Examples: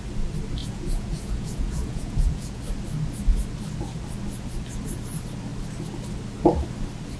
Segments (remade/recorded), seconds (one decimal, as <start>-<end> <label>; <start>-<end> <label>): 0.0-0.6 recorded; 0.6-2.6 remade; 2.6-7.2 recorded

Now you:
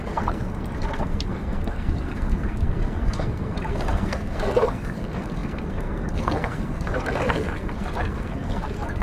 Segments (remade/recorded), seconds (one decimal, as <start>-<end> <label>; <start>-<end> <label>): 0.0-9.0 remade

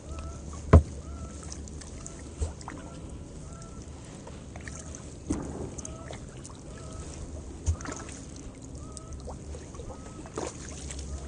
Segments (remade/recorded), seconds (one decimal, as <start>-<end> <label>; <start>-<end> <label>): 0.0-11.3 recorded

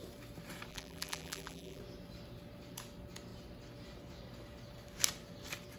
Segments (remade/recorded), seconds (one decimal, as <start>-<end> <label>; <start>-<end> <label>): 0.0-0.7 recorded; 0.7-1.8 remade; 1.8-5.8 recorded

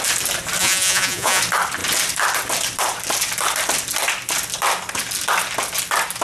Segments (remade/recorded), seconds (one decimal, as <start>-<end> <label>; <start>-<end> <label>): 0.0-0.6 recorded; 0.6-1.4 remade; 1.4-6.2 recorded

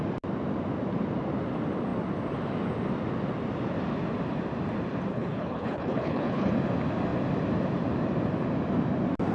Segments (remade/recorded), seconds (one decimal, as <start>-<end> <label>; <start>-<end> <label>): 0.0-5.1 recorded; 5.1-6.5 remade; 6.5-9.3 recorded

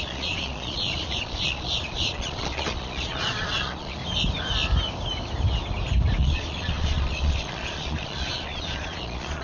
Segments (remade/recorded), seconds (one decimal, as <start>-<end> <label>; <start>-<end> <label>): 0.0-4.0 remade; 4.0-6.2 recorded; 6.2-9.4 remade

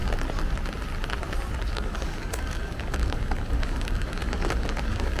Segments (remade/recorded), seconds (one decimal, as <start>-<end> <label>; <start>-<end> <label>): 0.0-1.7 recorded; 1.7-5.2 remade